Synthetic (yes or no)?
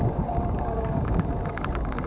yes